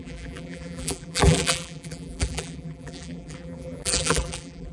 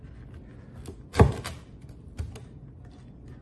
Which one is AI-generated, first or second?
first